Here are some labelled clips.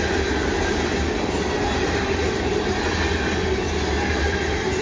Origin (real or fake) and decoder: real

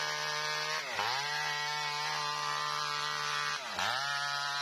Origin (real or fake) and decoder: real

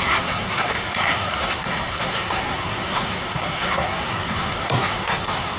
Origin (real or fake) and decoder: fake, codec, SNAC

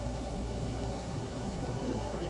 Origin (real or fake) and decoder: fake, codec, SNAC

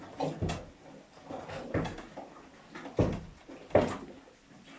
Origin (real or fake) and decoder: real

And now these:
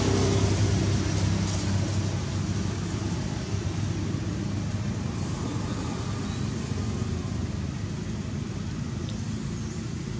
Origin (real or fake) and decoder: real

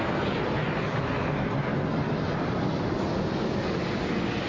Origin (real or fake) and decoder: real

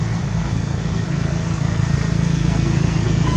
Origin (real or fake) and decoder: fake, codec, SNAC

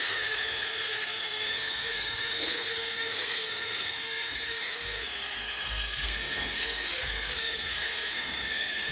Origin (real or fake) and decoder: fake, codec, SNAC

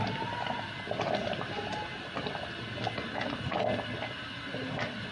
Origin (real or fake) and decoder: real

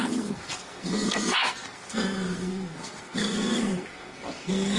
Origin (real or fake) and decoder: fake, codec, SNAC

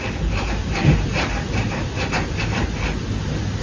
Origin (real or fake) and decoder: real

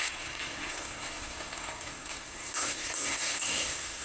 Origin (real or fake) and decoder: fake, codec, SNAC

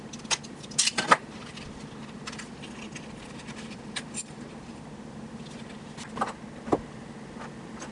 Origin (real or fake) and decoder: real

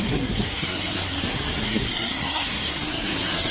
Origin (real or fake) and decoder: fake, codec, SNAC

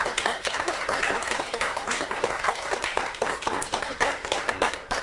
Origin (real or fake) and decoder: fake, codec, SNAC